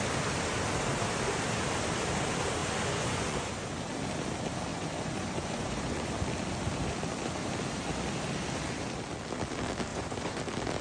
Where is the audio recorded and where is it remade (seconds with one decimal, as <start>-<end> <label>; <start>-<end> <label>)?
0.0-2.6 recorded; 2.6-3.5 remade; 3.5-4.7 recorded; 4.7-6.1 remade; 6.1-9.9 recorded; 9.9-10.4 remade; 10.4-10.8 recorded